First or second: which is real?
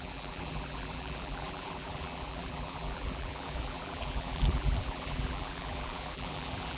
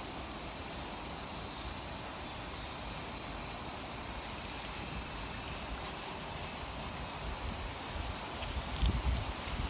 second